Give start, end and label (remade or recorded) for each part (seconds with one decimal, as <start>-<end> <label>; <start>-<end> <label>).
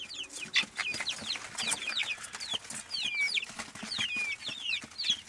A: 0.0-5.3 recorded